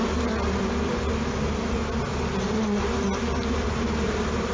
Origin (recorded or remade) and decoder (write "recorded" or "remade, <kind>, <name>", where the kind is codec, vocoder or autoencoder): recorded